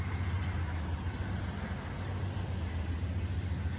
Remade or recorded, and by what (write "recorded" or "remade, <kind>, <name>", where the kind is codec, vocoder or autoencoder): recorded